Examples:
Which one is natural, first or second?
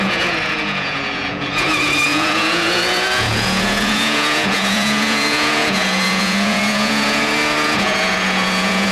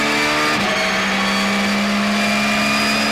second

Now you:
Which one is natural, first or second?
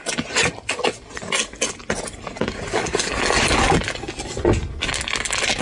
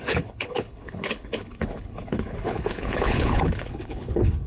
first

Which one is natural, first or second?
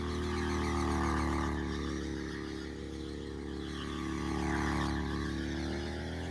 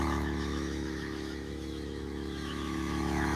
first